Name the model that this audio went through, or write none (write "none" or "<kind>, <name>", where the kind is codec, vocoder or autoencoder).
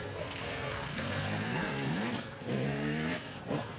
codec, SNAC